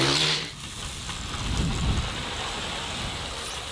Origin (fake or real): real